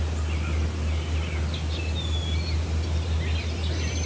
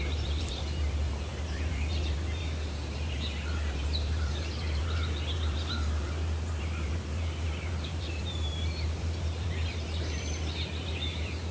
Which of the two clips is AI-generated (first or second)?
second